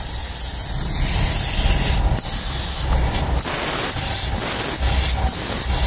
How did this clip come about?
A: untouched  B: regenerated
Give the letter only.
A